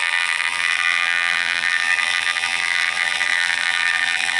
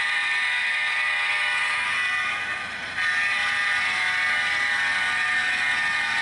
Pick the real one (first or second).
second